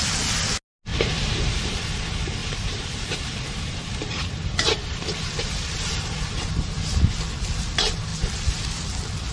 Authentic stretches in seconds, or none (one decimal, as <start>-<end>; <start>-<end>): 0.0-0.9; 1.6-2.4; 7.1-8.1; 8.9-9.3